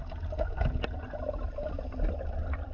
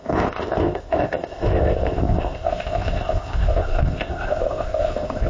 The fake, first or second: second